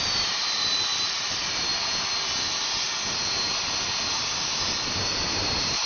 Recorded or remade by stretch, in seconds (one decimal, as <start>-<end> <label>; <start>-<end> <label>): 0.0-1.7 remade; 1.7-4.8 recorded; 4.8-5.9 remade